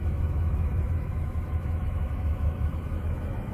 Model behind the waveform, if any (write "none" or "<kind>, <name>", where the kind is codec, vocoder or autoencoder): autoencoder, DAC-VAE